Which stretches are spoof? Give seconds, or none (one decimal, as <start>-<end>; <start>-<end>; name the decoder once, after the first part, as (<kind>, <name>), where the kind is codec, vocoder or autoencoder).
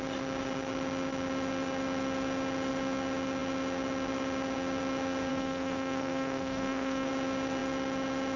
5.3-7.1 (codec, SNAC)